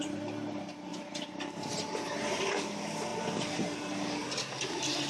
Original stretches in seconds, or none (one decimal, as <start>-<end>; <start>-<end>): 0.0-0.9; 2.5-5.1